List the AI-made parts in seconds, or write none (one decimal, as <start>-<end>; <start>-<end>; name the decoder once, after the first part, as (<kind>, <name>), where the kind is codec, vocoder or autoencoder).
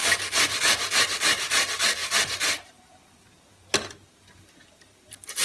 0.0-5.4 (vocoder, BigVGAN v2)